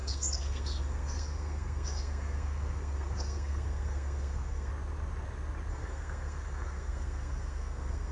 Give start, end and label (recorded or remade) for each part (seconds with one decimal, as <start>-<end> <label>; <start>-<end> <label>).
0.0-4.7 remade; 4.7-5.7 recorded; 5.7-8.1 remade